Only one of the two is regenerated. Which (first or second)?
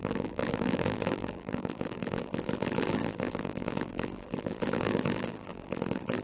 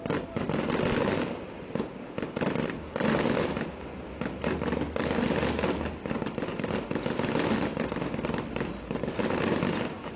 first